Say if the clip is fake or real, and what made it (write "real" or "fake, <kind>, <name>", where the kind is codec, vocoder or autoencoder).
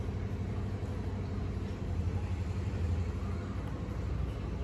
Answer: real